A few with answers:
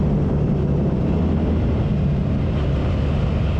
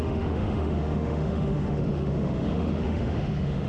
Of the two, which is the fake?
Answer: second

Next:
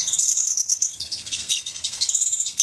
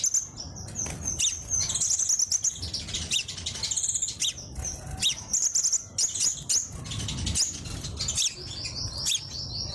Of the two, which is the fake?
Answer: first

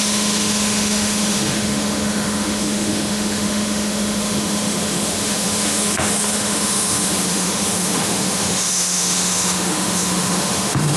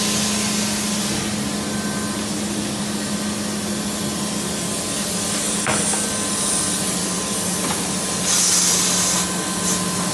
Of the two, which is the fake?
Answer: first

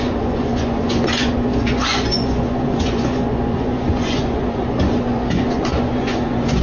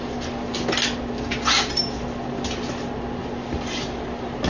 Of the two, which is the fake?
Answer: first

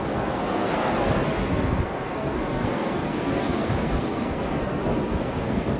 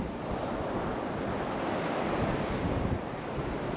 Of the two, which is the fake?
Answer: first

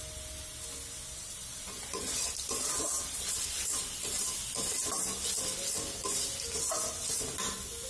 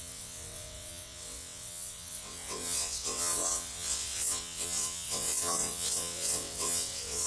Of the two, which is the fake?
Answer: second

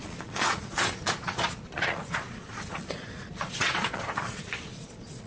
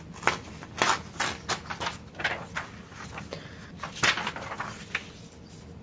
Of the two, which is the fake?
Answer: first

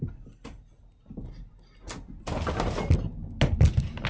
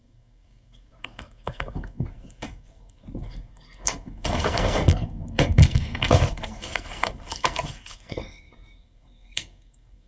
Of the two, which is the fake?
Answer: second